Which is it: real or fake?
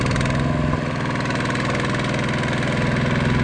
real